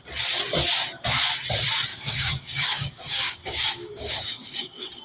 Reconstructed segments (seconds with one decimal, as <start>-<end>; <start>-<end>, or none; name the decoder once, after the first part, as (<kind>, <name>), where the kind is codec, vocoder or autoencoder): 1.9-5.0 (codec, DAC)